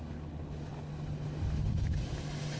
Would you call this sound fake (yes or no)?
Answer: no